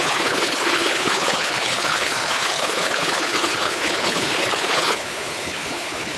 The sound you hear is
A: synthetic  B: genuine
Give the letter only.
A